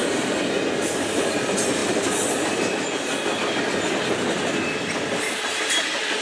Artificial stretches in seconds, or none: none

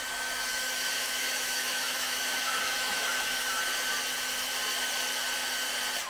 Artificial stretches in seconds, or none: 0.5-3.6 (autoencoder, DAC-VAE)